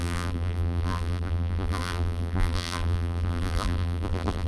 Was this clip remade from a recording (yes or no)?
yes